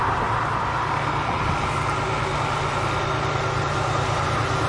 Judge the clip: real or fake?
real